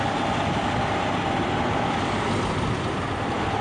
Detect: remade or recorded recorded